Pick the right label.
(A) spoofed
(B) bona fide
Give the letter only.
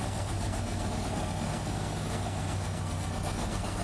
A